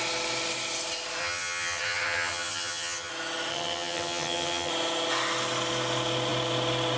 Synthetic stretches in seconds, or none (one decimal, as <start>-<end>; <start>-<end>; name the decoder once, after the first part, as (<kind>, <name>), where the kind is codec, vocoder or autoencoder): 1.2-3.1 (vocoder, HiFi-GAN); 3.5-4.7